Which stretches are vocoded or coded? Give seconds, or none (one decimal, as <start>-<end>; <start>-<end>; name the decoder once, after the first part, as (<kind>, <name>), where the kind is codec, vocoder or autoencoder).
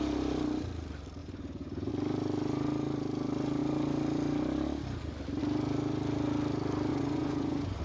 1.2-1.9 (vocoder, Vocos); 6.9-7.8